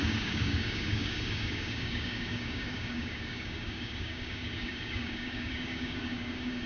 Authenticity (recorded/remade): remade